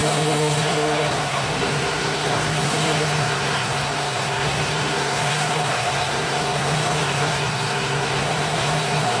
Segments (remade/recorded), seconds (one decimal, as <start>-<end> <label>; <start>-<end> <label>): 0.0-9.2 remade